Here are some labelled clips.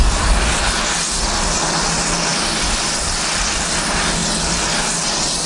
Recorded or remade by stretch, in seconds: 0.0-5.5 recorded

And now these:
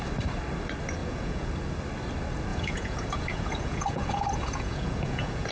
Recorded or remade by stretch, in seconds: 0.0-1.0 recorded; 1.0-1.5 remade; 1.5-2.5 recorded; 2.5-5.5 remade

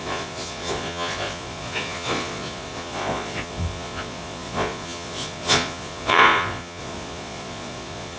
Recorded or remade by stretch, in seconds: 0.0-8.2 remade

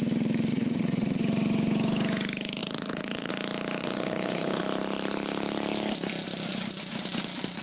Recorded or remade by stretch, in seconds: 0.0-0.5 recorded; 0.5-1.2 remade; 1.2-2.6 recorded; 2.6-3.3 remade; 3.3-3.8 recorded; 3.8-4.6 remade; 4.6-7.6 recorded

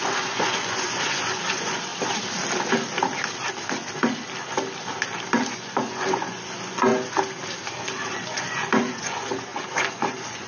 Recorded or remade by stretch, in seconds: 0.0-1.9 remade; 1.9-5.5 recorded; 5.5-6.9 remade; 6.9-7.7 recorded; 7.7-10.5 remade

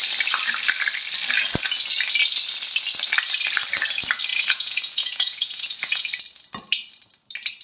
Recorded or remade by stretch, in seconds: 0.0-4.3 recorded; 4.3-6.1 remade; 6.1-7.6 recorded